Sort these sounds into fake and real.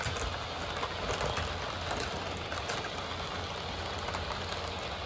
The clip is real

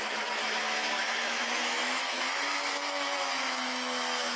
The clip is fake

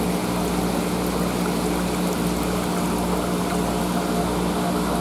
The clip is real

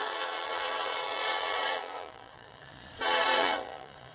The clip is fake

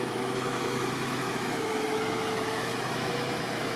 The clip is fake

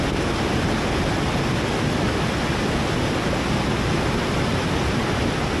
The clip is real